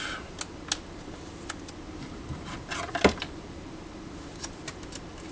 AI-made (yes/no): no